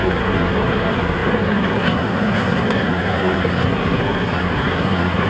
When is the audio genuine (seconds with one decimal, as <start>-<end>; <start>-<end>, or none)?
none